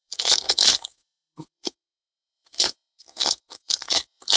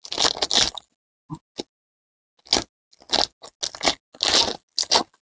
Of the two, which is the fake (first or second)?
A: first